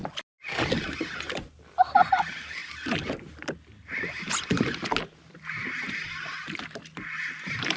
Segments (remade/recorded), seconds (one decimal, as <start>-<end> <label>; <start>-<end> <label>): 0.0-7.8 recorded